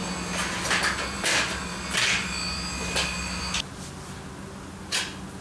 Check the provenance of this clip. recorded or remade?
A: recorded